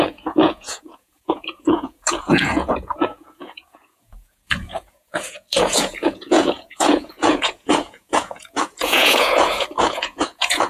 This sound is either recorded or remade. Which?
remade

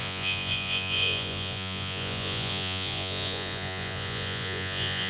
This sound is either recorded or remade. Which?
remade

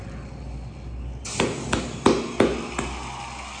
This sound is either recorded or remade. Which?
recorded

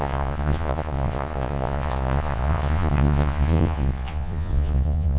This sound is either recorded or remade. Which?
remade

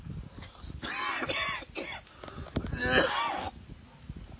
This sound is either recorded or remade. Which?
recorded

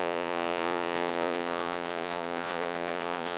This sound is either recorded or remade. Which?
remade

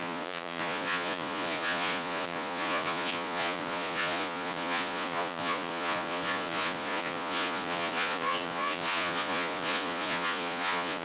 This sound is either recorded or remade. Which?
remade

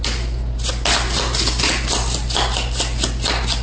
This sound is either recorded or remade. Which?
recorded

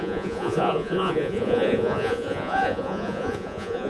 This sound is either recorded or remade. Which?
remade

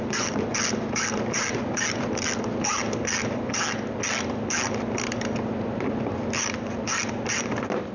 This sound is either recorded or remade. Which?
recorded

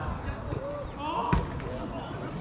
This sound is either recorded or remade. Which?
recorded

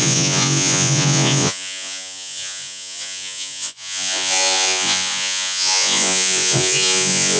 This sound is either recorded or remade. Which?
remade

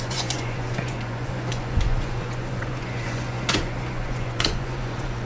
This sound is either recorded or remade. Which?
remade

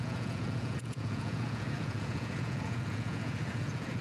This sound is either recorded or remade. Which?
remade